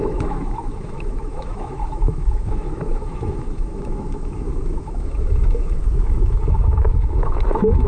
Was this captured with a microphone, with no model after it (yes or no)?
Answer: no